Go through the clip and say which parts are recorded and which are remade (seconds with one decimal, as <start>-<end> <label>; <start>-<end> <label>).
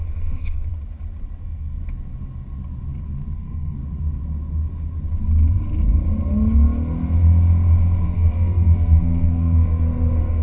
0.0-0.7 remade; 0.7-1.4 recorded; 1.4-1.8 remade; 1.8-3.3 recorded; 3.3-3.8 remade; 3.8-8.0 recorded; 8.0-10.4 remade